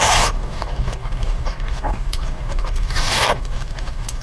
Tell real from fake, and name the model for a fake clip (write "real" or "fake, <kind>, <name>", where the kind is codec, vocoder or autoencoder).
fake, codec, DAC